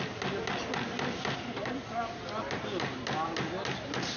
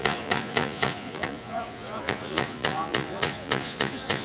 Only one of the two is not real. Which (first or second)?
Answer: second